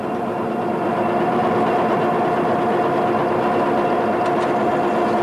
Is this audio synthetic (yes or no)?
no